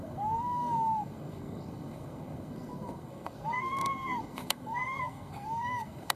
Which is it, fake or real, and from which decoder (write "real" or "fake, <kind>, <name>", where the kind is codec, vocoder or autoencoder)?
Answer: fake, codec, SNAC